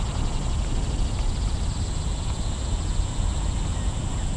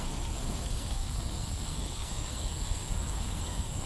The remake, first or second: second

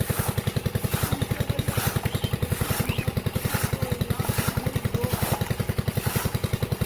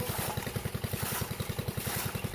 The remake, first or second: second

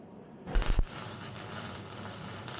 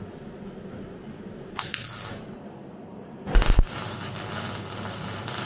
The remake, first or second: first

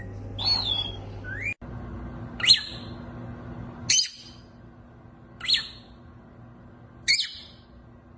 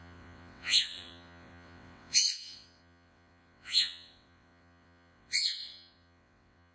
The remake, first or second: second